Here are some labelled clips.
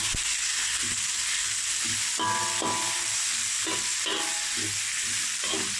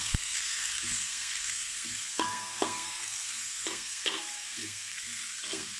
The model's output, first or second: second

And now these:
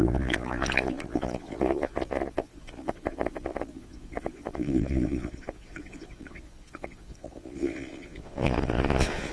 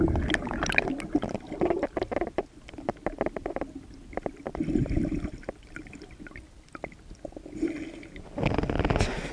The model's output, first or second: first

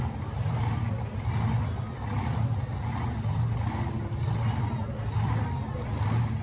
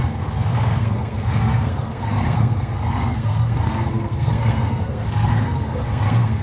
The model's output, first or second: second